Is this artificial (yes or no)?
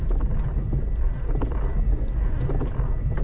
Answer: no